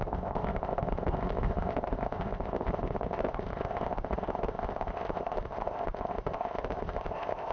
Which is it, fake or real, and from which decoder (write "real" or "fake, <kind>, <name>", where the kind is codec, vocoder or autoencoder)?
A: fake, codec, ZipCodec